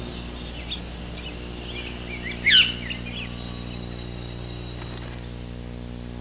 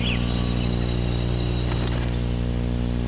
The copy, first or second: second